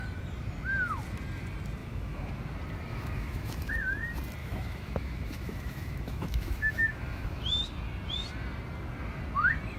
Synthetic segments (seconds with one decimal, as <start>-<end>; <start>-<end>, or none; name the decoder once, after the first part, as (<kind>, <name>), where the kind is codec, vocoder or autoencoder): 1.8-2.3 (autoencoder, DAC-VAE); 2.9-3.7; 4.4-7.4

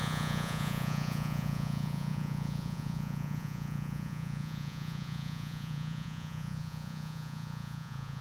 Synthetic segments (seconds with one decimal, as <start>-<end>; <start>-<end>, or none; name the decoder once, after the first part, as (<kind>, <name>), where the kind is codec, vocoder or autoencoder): 0.0-8.2 (vocoder, Vocos)

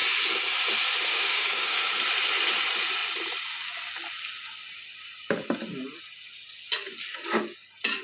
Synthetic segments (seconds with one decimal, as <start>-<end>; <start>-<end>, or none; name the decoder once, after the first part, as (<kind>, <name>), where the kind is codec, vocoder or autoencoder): 1.1-1.9 (codec, DAC)

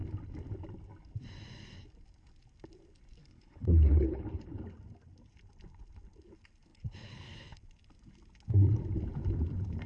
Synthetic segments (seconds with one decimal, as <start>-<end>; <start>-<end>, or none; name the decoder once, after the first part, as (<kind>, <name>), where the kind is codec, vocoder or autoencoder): 3.2-4.6 (codec, HILCodec); 6.7-7.6

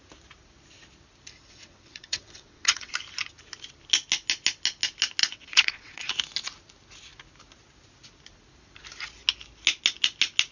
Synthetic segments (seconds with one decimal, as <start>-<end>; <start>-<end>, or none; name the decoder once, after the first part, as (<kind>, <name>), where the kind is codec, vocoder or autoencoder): 1.4-2.9 (vocoder, WaveNeXt); 5.2-6.1

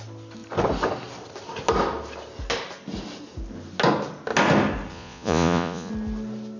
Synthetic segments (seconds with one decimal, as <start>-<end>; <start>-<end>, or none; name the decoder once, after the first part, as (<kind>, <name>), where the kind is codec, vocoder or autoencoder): 4.9-5.9 (vocoder, Vocos)

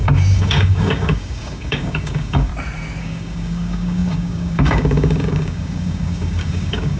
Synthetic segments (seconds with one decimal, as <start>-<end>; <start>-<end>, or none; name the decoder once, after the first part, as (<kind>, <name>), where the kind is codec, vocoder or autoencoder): 0.0-2.5 (codec, DAC); 3.0-7.0

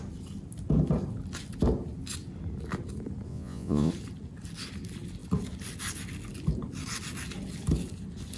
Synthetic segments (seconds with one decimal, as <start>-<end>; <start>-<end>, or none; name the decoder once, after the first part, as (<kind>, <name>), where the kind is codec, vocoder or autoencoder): 3.3-3.9 (vocoder, Vocos)